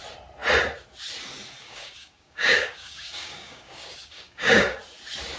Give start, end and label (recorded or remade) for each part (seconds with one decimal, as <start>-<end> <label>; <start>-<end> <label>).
0.0-1.6 recorded; 1.6-4.8 remade; 4.8-5.4 recorded